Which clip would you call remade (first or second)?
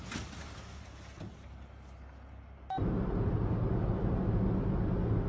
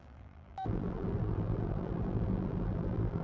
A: second